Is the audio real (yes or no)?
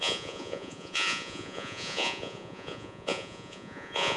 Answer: no